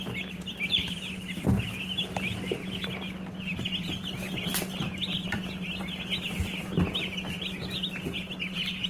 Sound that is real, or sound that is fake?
real